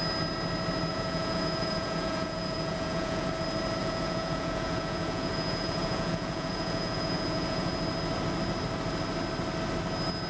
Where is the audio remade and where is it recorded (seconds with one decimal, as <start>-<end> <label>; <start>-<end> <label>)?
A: 0.0-0.9 recorded; 0.9-3.3 remade; 3.3-3.8 recorded; 3.8-7.7 remade; 7.7-10.3 recorded